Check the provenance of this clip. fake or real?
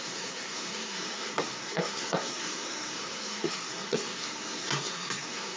fake